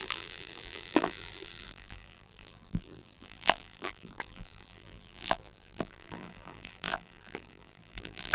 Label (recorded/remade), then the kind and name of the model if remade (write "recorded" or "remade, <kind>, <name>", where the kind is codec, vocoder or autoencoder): remade, vocoder, BigVGAN v2